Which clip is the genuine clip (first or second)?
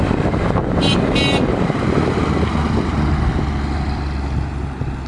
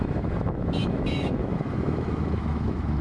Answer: first